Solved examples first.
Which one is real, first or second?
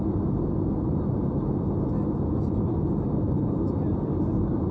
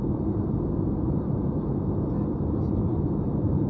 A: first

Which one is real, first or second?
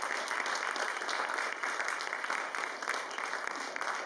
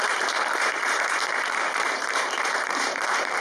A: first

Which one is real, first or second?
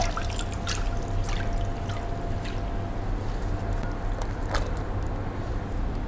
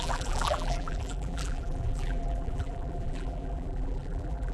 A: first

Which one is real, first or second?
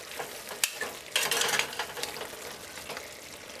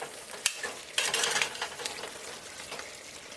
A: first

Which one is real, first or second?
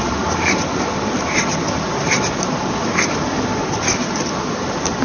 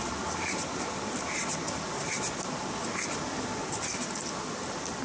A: second